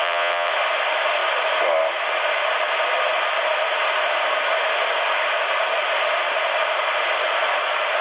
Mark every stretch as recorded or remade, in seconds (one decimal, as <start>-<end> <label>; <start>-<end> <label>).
0.0-0.5 remade; 0.5-8.0 recorded